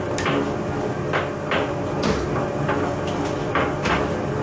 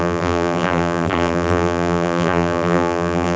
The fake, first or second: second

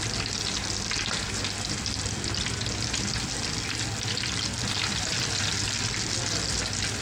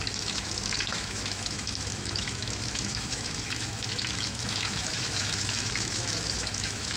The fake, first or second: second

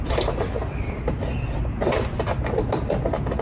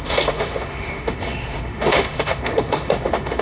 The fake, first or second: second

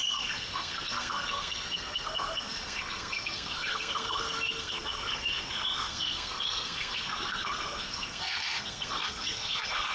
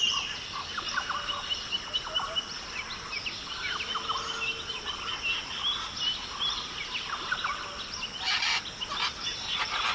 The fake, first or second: first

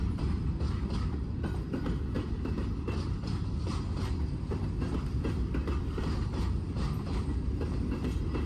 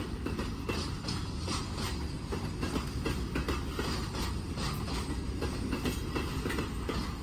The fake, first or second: first